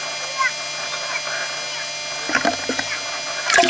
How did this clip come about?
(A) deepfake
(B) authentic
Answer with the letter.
B